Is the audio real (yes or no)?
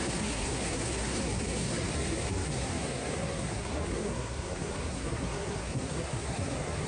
no